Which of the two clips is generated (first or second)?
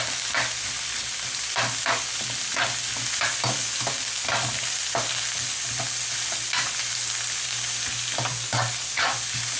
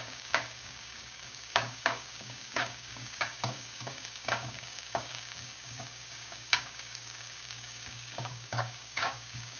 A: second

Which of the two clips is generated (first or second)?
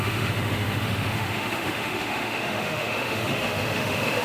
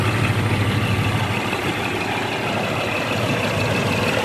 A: first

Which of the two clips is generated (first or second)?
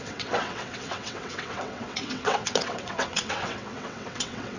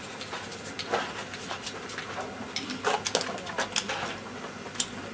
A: first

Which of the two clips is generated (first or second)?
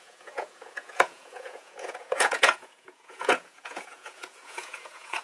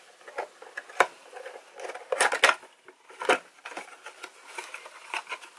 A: first